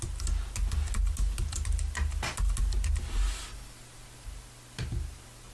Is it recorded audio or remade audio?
recorded